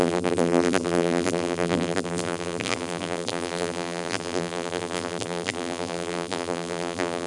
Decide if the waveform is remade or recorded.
remade